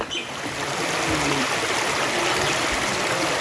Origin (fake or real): real